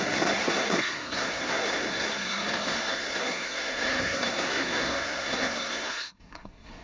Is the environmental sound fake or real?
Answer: fake